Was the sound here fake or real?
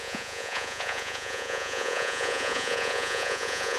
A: fake